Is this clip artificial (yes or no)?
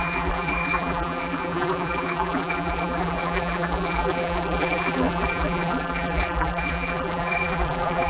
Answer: yes